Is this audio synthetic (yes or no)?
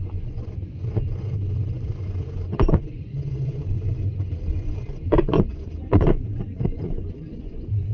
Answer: yes